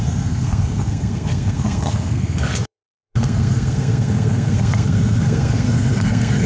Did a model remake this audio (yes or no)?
yes